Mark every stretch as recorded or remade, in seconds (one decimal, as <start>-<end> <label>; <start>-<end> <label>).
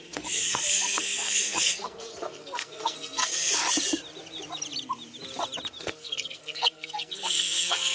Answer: 0.0-3.6 remade; 3.6-5.8 recorded; 5.8-7.9 remade